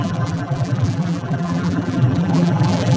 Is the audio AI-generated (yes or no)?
yes